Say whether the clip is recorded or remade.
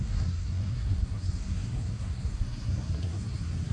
remade